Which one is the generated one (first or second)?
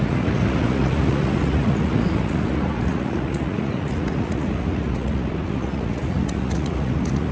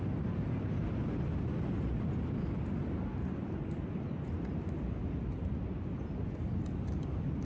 first